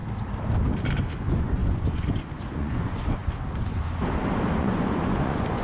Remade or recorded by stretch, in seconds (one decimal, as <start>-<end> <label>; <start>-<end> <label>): 0.0-1.2 recorded; 1.2-3.2 remade; 3.2-4.6 recorded; 4.6-5.6 remade

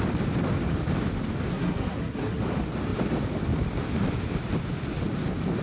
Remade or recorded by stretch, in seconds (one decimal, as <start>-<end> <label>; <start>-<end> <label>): 0.0-1.5 recorded; 1.5-2.4 remade; 2.4-5.6 recorded